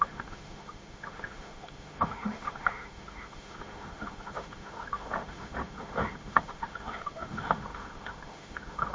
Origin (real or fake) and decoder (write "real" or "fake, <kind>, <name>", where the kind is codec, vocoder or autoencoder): fake, autoencoder, DAC-VAE